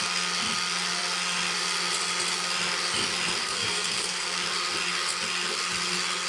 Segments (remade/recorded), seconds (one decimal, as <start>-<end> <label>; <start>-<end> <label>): 0.0-3.4 recorded; 3.4-4.4 remade; 4.4-6.3 recorded